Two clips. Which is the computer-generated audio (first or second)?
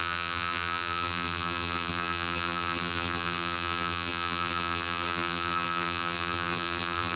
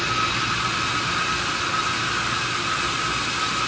first